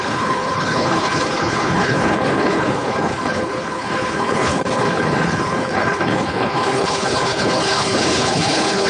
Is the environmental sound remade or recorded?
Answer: remade